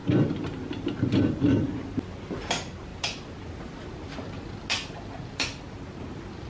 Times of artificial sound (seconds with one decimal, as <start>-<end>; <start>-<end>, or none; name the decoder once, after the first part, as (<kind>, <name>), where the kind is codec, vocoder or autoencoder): none